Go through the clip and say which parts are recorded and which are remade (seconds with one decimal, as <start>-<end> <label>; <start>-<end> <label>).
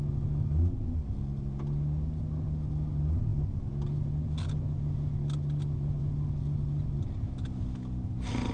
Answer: 0.0-8.5 recorded